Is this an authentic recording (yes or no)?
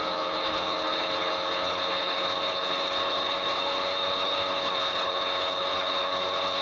no